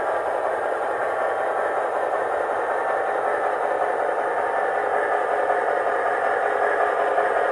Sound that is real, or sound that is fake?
real